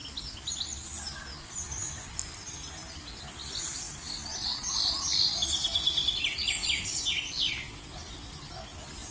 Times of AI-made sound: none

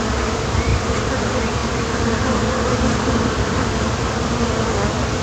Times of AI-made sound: 0.7-1.2

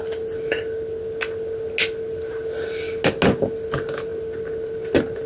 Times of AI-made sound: none

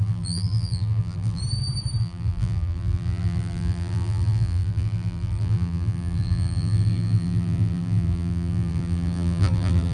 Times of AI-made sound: 0.0-1.4; 2.0-9.9

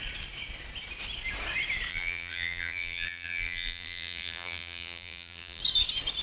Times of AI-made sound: 1.9-5.6

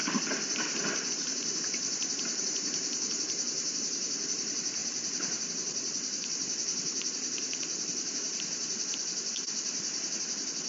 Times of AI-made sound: 1.1-10.7

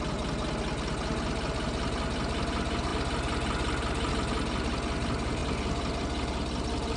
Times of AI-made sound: none

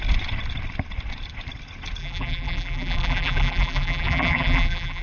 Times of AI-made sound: 2.0-5.0